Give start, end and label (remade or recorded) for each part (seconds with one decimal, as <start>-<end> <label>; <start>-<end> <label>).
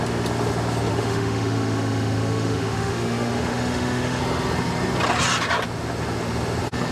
0.0-0.9 recorded; 0.9-4.2 remade; 4.2-6.9 recorded